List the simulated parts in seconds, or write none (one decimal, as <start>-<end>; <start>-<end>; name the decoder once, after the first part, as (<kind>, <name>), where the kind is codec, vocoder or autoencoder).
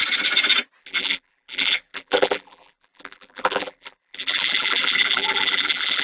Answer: 0.8-6.0 (vocoder, BigVGAN v2)